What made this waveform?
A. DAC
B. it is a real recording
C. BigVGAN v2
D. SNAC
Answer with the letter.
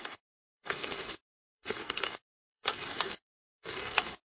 D